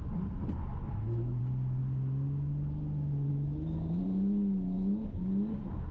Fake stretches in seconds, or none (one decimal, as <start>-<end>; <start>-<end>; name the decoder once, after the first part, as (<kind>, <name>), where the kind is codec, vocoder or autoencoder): 0.7-1.4 (autoencoder, DAC-VAE)